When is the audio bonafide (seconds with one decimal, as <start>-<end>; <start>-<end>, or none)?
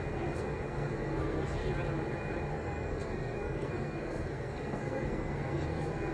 1.6-2.5